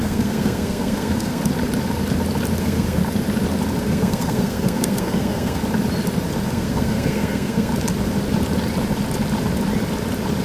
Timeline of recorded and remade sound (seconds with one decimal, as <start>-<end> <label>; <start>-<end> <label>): 0.0-1.4 remade; 1.4-2.6 recorded; 2.6-3.0 remade; 3.0-3.8 recorded; 3.8-5.6 remade; 5.6-6.5 recorded; 6.5-7.7 remade; 7.7-10.4 recorded